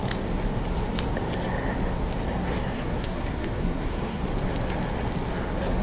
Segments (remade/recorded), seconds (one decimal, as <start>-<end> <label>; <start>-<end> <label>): 0.0-2.3 recorded; 2.3-4.2 remade; 4.2-5.3 recorded; 5.3-5.8 remade